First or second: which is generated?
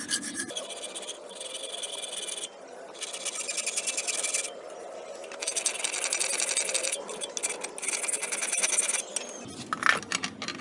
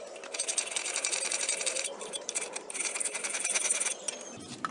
second